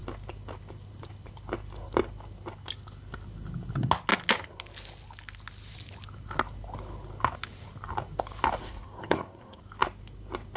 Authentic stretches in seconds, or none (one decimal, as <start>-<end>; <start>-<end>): 0.0-8.6; 9.6-10.6

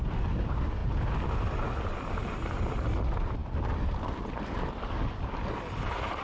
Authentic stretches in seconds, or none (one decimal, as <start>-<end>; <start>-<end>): 0.0-6.2

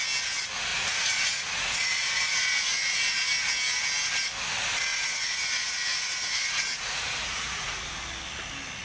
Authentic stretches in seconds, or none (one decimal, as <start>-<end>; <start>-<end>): 0.0-0.7; 3.3-4.9; 7.8-8.8

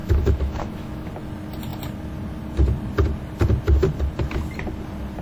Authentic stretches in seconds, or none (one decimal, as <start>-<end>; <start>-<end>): 1.1-5.2

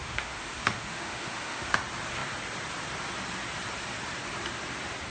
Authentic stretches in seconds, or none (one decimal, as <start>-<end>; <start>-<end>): 1.8-5.1